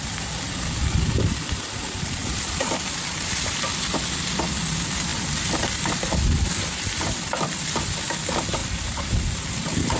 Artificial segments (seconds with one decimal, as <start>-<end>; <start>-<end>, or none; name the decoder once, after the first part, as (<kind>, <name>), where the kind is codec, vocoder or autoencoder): 2.2-3.1 (vocoder, BigVGAN v2); 5.1-8.0; 8.6-9.1